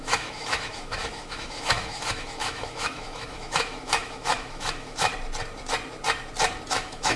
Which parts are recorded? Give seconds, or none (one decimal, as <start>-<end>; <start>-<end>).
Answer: 5.1-6.7